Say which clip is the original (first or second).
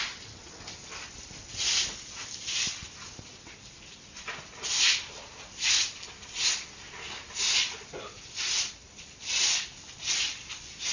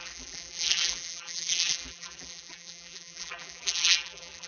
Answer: first